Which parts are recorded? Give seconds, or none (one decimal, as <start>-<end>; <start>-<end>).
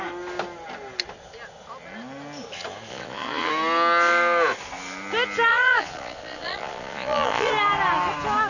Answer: 0.0-2.9; 3.5-5.5; 7.5-8.5